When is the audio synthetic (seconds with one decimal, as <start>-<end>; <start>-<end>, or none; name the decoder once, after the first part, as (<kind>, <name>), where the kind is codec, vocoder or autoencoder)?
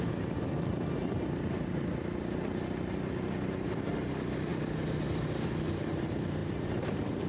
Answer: 0.0-7.3 (vocoder, BigVGAN v2)